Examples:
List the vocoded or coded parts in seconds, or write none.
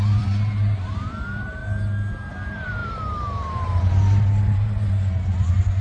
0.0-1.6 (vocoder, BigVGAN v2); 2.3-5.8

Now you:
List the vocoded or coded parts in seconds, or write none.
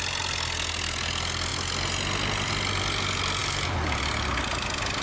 3.4-4.0 (vocoder, BigVGAN v2)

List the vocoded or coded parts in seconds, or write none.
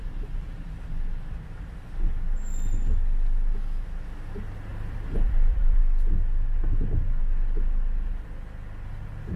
4.7-5.8 (vocoder, BigVGAN v2)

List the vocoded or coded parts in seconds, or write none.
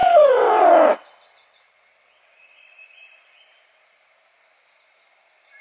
0.0-2.7 (vocoder, WaveNeXt)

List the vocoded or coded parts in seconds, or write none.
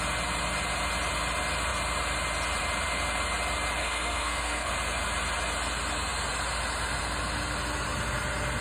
3.8-4.7 (codec, SNAC)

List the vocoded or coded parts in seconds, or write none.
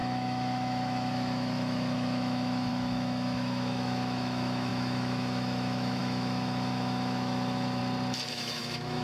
0.0-7.8 (autoencoder, DAC-VAE); 8.3-9.0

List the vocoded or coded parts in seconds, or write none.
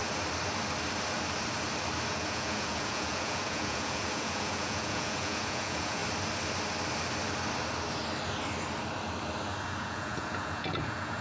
2.1-6.0 (vocoder, Vocos); 9.8-11.2